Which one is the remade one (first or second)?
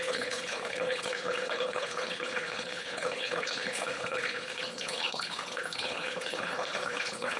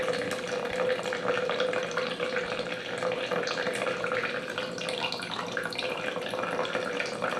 first